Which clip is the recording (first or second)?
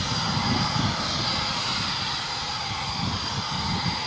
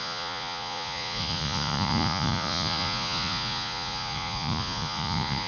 first